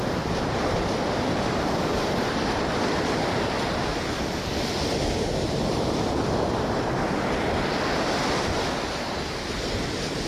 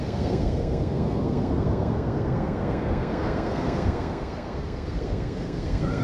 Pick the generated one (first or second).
second